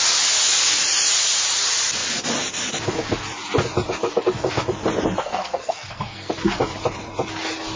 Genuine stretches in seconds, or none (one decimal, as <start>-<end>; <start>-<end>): 0.0-5.2; 6.3-7.8